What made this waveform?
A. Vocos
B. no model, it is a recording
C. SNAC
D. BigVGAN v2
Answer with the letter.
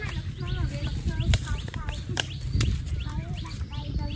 B